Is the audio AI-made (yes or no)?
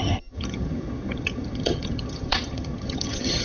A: yes